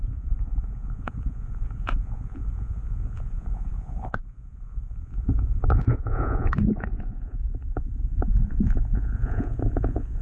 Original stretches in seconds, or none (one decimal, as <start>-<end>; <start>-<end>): none